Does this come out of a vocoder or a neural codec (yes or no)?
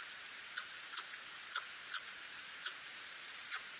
yes